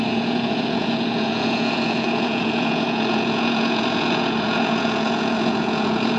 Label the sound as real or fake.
fake